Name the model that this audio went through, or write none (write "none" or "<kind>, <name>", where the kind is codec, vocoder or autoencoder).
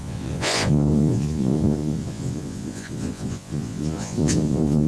vocoder, Vocos